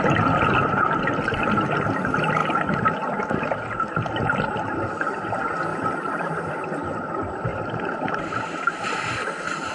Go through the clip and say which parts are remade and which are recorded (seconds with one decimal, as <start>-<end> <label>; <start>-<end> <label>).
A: 0.0-5.7 recorded; 5.7-6.5 remade; 6.5-9.7 recorded